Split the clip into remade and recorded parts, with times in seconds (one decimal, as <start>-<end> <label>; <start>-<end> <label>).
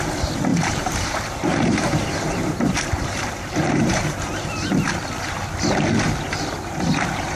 0.0-0.5 recorded; 0.5-4.9 remade; 4.9-7.4 recorded